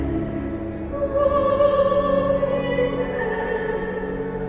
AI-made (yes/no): no